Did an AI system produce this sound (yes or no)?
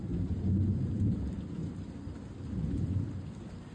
no